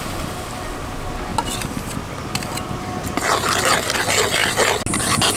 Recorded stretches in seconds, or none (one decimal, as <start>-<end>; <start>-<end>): 0.0-1.3; 3.6-5.4